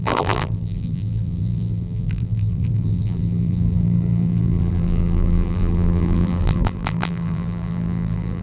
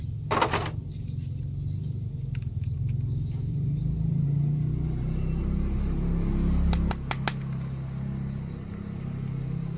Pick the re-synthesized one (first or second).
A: first